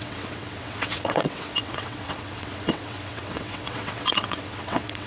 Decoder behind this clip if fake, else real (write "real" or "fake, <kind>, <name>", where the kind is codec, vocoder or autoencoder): fake, vocoder, WaveNeXt